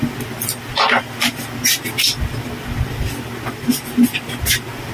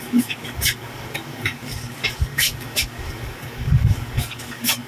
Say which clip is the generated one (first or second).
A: second